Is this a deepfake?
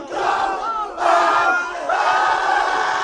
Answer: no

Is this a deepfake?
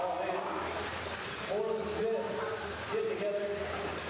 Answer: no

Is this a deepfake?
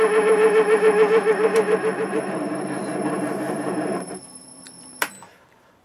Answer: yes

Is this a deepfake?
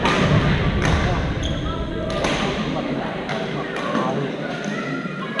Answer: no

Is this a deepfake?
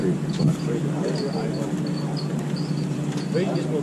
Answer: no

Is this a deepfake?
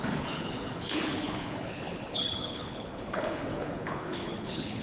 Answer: yes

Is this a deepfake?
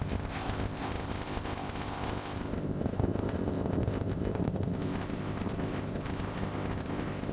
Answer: yes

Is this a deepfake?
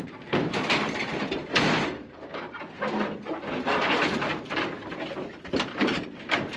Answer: yes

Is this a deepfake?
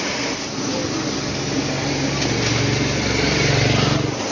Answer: no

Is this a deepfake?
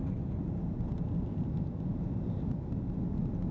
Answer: no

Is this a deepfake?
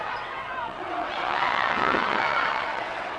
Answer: yes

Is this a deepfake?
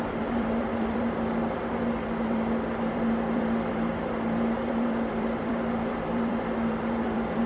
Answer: yes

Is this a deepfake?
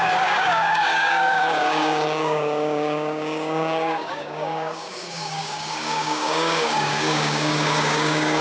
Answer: yes